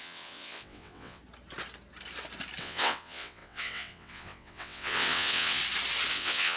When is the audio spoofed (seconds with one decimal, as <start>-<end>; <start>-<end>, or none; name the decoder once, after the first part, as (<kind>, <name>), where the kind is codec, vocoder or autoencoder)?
0.0-1.2 (vocoder, WaveNeXt); 2.6-5.6; 6.1-6.6